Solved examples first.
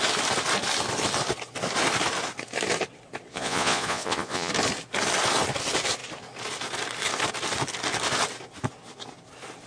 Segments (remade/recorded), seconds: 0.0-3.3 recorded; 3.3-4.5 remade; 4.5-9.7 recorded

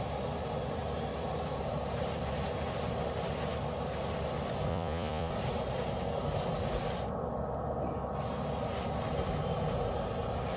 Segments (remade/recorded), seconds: 0.0-4.7 recorded; 4.7-5.3 remade; 5.3-10.6 recorded